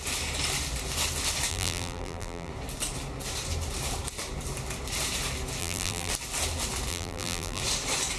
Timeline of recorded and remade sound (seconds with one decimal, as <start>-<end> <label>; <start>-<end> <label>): 0.0-1.5 recorded; 1.5-2.5 remade; 2.5-5.6 recorded; 5.6-6.1 remade; 6.1-6.9 recorded; 6.9-7.6 remade; 7.6-8.2 recorded